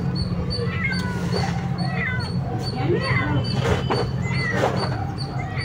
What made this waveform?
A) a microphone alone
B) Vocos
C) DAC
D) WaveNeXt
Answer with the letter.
A